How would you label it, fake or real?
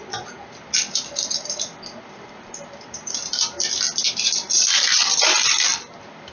fake